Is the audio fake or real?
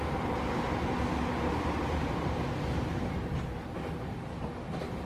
real